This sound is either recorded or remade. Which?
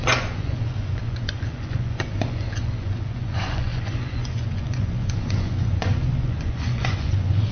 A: remade